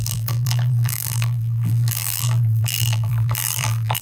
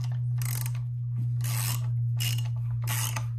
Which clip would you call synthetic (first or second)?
first